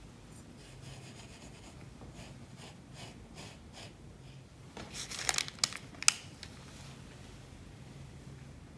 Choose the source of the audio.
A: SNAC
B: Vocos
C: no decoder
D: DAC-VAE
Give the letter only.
C